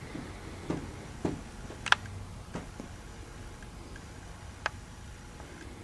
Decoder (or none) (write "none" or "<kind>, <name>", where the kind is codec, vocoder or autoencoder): none